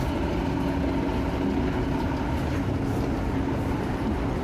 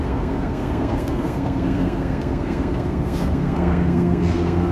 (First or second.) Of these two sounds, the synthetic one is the second